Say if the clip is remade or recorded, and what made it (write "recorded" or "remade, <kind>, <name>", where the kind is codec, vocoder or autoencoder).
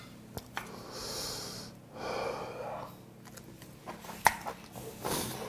recorded